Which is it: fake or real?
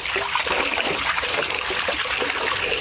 real